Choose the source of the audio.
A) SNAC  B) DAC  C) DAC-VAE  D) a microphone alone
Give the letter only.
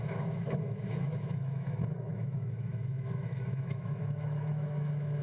C